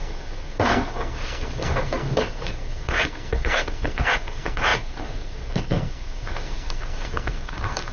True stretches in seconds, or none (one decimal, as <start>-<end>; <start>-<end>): none